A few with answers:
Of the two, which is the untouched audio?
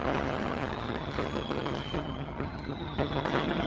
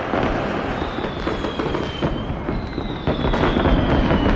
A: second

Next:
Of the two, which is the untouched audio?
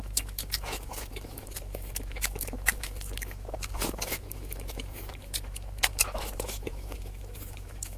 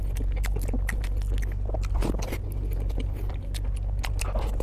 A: second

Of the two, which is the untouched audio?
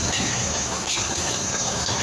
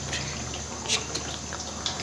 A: second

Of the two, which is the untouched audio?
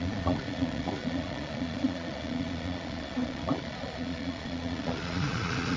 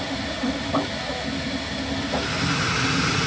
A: second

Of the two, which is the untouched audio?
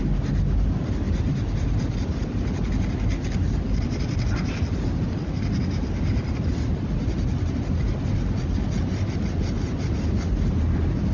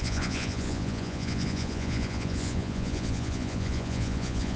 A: first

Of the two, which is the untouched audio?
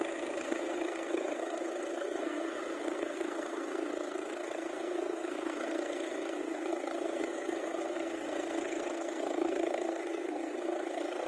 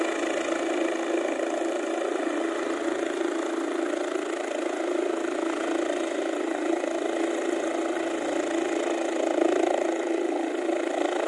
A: second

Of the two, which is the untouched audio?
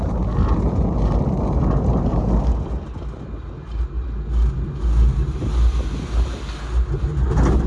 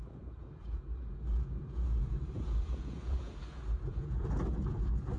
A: first